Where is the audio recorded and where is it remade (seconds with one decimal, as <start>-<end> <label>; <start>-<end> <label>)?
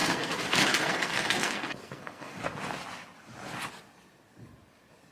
0.0-2.4 remade; 2.4-5.1 recorded